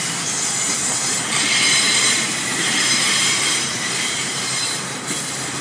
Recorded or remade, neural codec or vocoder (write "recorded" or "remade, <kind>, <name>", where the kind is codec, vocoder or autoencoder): remade, vocoder, BigVGAN v2